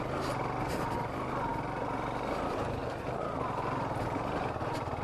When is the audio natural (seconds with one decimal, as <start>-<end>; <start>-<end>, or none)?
0.0-2.8